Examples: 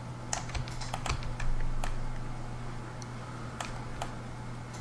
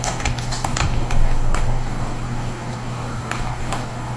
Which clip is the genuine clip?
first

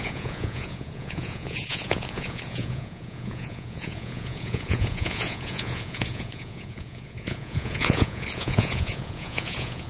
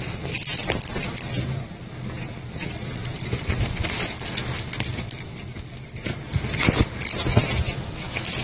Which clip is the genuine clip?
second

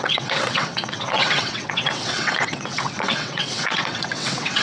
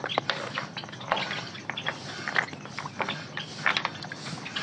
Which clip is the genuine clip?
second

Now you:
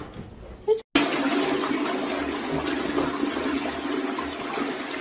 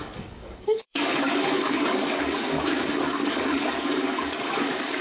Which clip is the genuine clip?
first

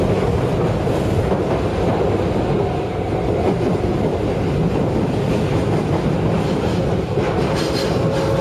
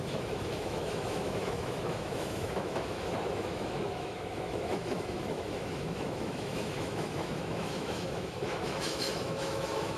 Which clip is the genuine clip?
first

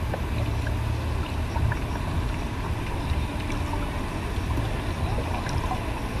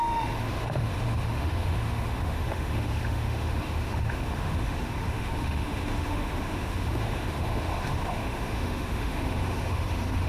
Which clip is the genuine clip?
first